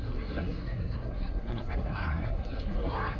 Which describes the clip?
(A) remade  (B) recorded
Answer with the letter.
A